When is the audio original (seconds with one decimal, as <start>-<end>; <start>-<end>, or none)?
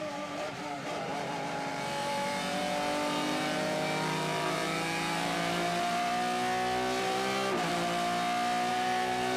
6.1-7.0; 7.7-8.7